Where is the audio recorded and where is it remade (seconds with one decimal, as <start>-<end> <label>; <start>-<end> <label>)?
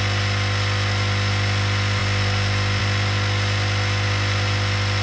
0.0-5.0 recorded